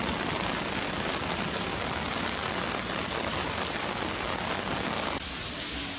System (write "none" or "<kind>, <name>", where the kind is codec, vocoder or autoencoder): none